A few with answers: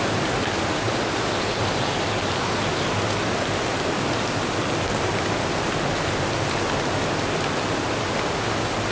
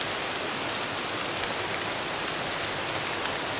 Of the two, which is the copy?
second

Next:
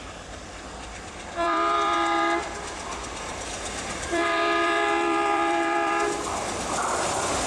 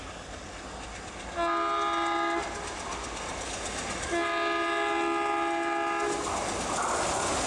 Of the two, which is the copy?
first